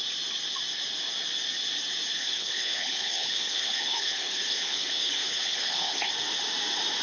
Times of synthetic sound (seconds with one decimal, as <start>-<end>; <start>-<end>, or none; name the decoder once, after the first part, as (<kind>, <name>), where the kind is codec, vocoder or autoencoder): 2.2-6.1 (codec, HILCodec)